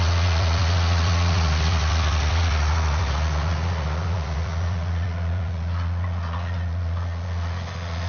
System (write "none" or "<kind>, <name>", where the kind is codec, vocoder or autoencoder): vocoder, Vocos